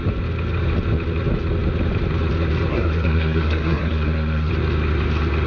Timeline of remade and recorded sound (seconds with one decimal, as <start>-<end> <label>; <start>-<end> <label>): 0.0-2.7 recorded; 2.7-4.5 remade; 4.5-5.5 recorded